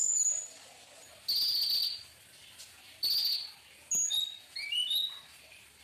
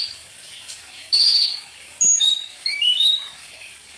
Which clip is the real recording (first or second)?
first